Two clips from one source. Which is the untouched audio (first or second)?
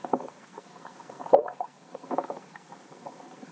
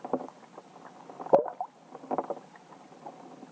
second